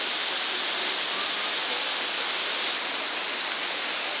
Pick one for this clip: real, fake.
real